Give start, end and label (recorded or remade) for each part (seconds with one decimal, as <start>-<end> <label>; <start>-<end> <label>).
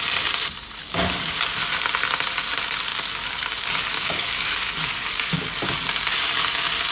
0.0-0.8 recorded; 0.8-1.3 remade; 1.3-2.9 recorded; 2.9-5.6 remade; 5.6-6.9 recorded